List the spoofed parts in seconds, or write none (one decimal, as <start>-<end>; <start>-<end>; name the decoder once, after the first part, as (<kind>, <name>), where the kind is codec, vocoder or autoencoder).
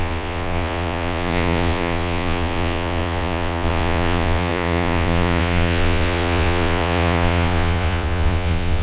0.0-8.8 (vocoder, Vocos)